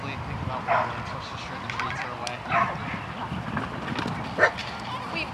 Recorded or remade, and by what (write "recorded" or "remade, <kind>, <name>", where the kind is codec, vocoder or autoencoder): recorded